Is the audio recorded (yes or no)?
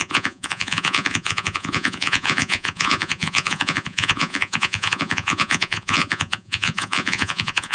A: no